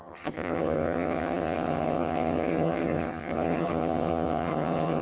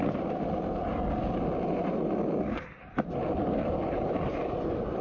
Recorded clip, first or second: second